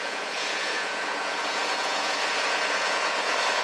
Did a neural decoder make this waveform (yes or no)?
yes